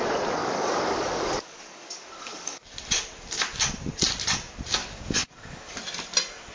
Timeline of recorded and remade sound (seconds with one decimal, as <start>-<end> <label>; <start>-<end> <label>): 0.0-0.4 recorded; 0.4-2.6 remade; 2.6-4.8 recorded; 4.8-5.8 remade; 5.8-6.5 recorded